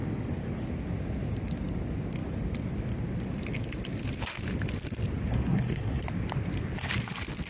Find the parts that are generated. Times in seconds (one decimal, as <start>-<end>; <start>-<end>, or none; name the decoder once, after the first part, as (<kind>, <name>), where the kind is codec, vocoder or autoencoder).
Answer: 5.3-6.0 (codec, SNAC)